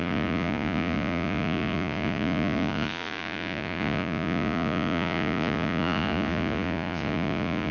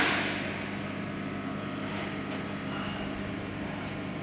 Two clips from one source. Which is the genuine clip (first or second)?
second